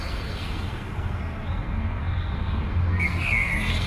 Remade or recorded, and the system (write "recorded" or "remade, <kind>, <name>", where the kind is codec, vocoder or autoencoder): remade, codec, SNAC